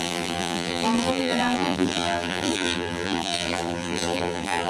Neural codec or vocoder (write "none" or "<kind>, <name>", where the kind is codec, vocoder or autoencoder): vocoder, BigVGAN v2